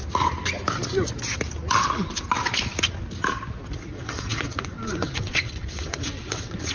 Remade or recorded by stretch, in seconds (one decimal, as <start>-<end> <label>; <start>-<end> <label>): 0.0-3.9 recorded; 3.9-6.7 remade